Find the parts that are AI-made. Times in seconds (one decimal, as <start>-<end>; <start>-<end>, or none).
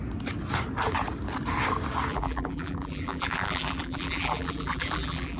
2.1-5.4